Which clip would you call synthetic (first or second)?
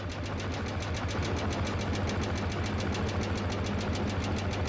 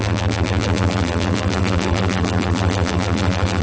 second